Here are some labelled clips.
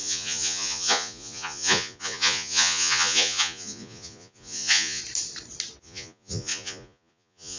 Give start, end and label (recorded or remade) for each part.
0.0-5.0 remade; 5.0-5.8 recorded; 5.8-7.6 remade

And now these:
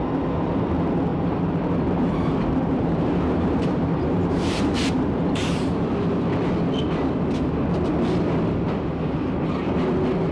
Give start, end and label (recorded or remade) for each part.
0.0-1.1 recorded; 1.1-5.7 remade; 5.7-10.3 recorded

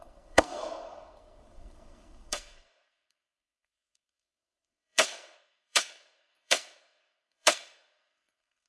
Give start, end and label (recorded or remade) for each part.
0.0-8.7 remade